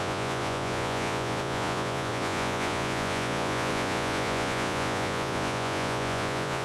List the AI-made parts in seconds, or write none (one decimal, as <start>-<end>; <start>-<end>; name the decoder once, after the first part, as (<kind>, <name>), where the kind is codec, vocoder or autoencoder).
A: 0.0-6.6 (vocoder, Vocos)